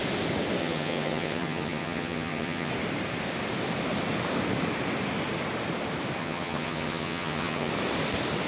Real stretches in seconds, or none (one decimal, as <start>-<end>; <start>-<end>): 0.0-0.6; 2.7-6.2; 7.7-8.5